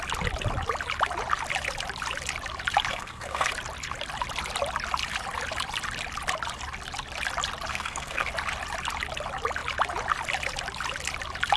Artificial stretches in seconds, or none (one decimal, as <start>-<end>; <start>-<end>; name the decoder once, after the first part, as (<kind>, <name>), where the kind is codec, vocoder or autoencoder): 2.9-3.5 (codec, SNAC); 7.7-8.3